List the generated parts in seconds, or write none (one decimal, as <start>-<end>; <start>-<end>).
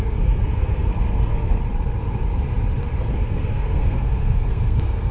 0.0-1.6; 3.1-5.1